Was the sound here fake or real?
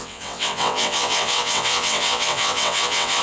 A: fake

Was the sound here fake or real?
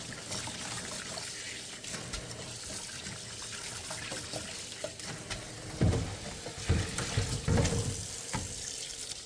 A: real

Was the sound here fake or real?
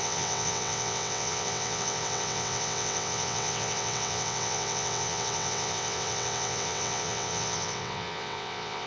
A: fake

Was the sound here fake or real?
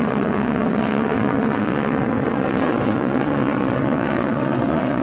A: fake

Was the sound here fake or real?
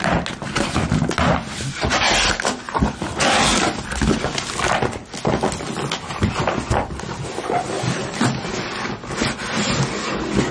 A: real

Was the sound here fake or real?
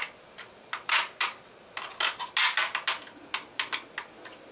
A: real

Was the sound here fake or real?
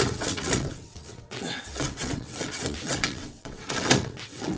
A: fake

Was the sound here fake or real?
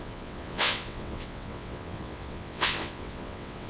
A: fake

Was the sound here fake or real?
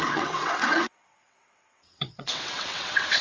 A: fake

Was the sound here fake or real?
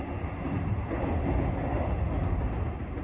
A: real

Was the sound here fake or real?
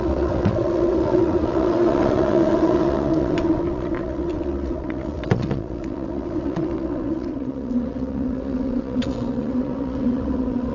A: fake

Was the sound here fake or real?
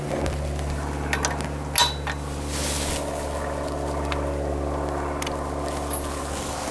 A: real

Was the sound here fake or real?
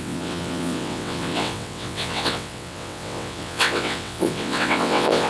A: fake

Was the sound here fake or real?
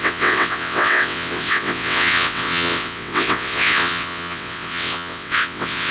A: fake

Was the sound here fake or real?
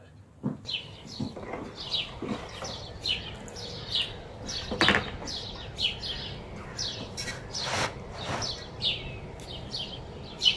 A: real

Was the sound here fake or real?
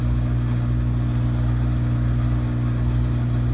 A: real